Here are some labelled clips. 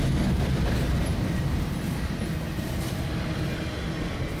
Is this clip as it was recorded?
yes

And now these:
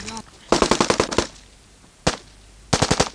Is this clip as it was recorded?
yes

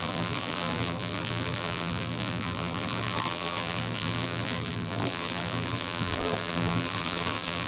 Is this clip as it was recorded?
no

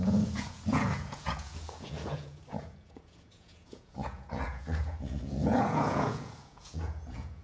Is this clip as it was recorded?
no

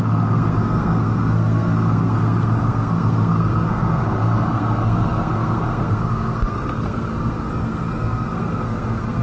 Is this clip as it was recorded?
no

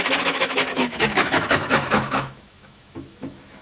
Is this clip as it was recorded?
no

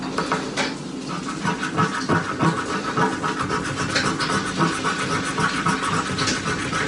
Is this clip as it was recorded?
yes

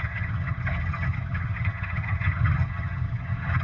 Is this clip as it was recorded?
no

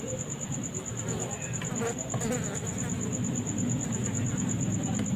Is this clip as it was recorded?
yes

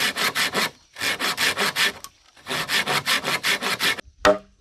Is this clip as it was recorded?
yes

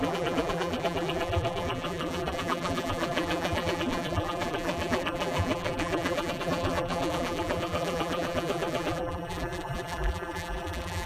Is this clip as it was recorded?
no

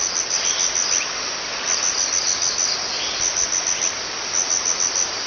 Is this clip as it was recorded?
yes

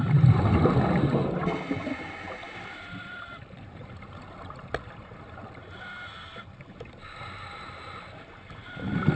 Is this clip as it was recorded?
yes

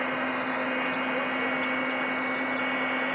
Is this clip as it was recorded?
yes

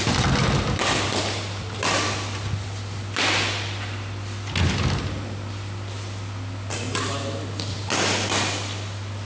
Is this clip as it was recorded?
yes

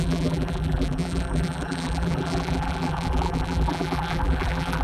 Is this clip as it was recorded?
no